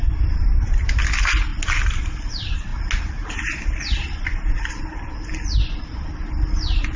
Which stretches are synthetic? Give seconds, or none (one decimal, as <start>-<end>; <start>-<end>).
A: none